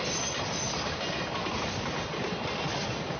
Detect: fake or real real